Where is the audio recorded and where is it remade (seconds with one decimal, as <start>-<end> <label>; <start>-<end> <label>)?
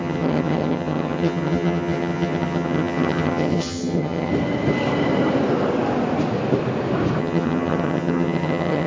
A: 0.0-4.3 remade; 4.3-7.2 recorded; 7.2-8.9 remade